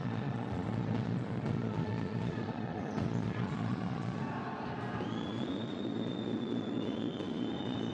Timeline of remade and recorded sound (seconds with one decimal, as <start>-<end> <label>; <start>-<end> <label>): 0.0-4.2 remade; 4.2-5.1 recorded; 5.1-7.9 remade